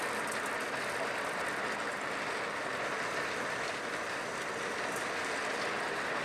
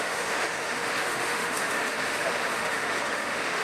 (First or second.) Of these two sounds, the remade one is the second